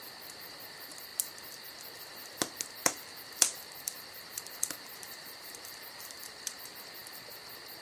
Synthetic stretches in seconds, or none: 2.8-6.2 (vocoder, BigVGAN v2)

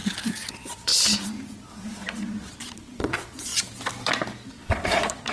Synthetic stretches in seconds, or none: 0.5-0.9 (vocoder, Vocos); 1.7-3.5; 4.5-5.3

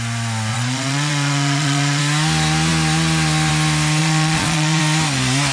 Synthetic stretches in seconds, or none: 0.5-2.0 (vocoder, Vocos); 4.0-4.8

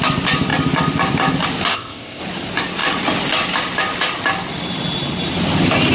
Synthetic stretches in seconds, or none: 1.7-2.2 (codec, ZipCodec)

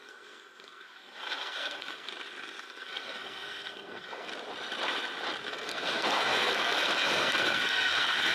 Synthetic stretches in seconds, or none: 0.0-2.1 (codec, SNAC); 2.6-4.3; 5.5-8.3

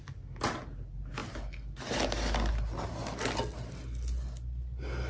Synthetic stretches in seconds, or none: none

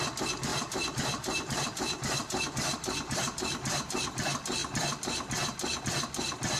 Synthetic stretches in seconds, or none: 0.5-3.8 (vocoder, BigVGAN v2)